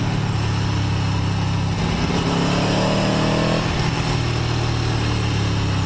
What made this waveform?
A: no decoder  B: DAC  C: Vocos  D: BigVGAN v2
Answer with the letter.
A